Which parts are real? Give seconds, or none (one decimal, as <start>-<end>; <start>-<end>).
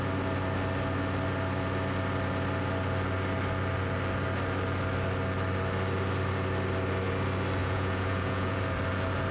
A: 0.0-7.6; 8.6-9.3